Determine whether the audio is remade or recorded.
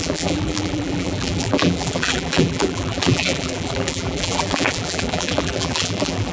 remade